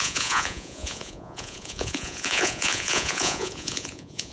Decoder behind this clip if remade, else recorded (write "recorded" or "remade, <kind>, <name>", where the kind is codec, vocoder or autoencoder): remade, vocoder, Vocos